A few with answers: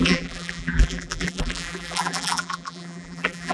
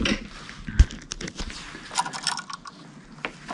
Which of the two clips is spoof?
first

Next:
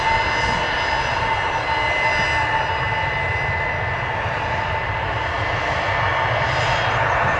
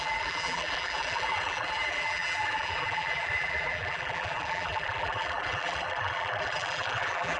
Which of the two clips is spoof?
second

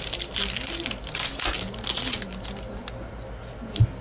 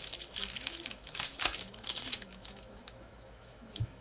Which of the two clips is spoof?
second